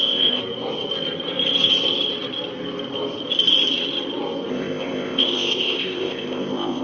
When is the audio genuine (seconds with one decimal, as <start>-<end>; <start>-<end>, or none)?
0.4-4.5